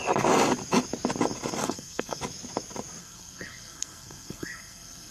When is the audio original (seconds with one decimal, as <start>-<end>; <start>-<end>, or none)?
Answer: 0.0-1.6; 2.2-3.0